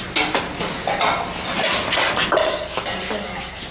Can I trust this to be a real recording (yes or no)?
yes